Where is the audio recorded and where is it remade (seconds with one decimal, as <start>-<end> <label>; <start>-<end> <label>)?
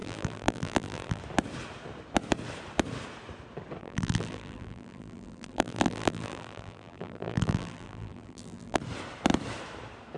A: 0.0-1.2 remade; 1.2-3.8 recorded; 3.8-8.8 remade; 8.8-10.2 recorded